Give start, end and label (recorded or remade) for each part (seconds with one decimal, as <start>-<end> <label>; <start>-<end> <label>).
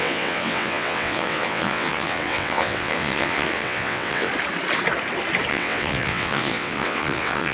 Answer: 0.0-4.3 remade; 4.3-5.5 recorded; 5.5-7.5 remade